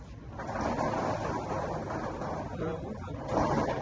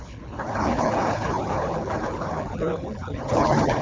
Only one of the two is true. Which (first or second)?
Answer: first